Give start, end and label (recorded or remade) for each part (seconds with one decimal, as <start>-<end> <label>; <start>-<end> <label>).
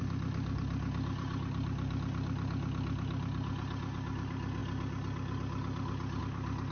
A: 0.0-6.7 recorded